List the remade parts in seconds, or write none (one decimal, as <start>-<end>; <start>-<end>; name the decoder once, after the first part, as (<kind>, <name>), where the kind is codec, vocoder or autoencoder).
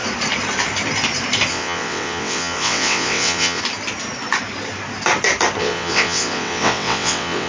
1.5-3.6 (vocoder, WaveNeXt); 5.6-7.5